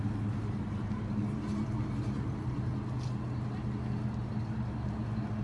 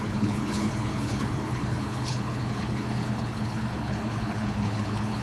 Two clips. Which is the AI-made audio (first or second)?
second